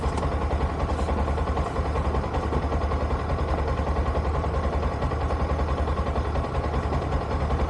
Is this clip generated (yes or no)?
no